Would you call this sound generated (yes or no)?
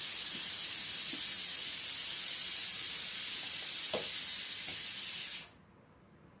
no